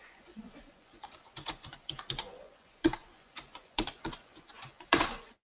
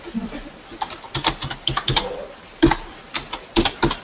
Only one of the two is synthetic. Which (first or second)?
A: first